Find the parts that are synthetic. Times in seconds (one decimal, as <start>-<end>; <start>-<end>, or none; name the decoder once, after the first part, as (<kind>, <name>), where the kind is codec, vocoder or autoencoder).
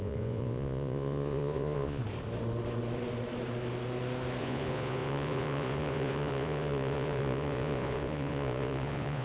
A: 0.0-2.0 (vocoder, Vocos); 4.4-9.2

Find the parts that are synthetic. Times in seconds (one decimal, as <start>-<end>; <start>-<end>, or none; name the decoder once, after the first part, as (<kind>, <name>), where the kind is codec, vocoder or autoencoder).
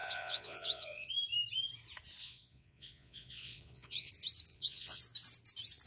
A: 0.0-1.1 (vocoder, Vocos); 2.2-4.1; 4.5-5.0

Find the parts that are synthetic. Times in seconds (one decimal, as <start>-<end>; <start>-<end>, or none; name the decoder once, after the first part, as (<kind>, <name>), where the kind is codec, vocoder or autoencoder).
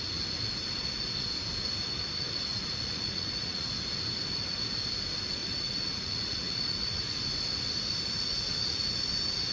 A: 2.5-3.7 (vocoder, Vocos); 5.4-7.2; 8.3-8.9